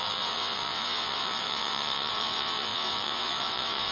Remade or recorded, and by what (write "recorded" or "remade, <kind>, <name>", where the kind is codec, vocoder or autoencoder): remade, vocoder, WaveNeXt